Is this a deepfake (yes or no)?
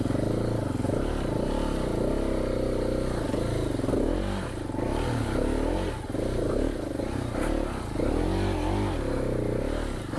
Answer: no